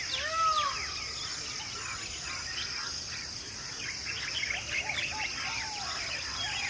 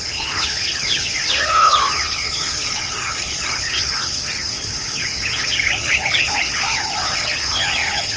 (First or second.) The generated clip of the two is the second